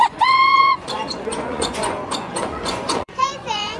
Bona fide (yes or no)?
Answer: no